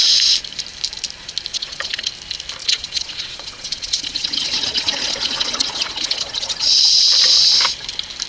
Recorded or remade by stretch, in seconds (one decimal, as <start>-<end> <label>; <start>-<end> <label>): 0.0-1.5 recorded; 1.5-2.1 remade; 2.1-2.6 recorded; 2.6-6.8 remade; 6.8-8.3 recorded